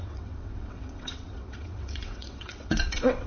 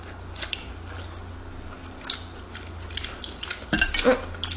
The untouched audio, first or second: second